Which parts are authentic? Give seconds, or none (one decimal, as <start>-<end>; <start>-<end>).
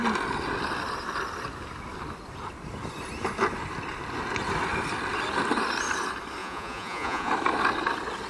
0.0-6.4; 7.3-8.3